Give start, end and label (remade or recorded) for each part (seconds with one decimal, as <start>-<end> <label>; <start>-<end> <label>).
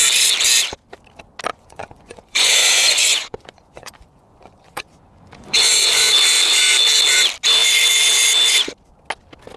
0.0-1.5 recorded; 1.5-6.1 remade; 6.1-9.6 recorded